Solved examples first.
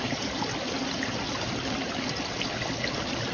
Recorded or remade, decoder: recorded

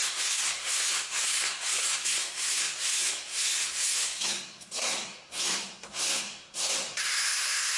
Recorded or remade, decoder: remade, codec, SNAC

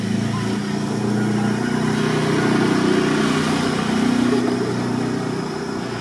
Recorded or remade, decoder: recorded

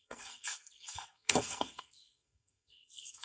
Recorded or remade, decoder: remade, codec, SNAC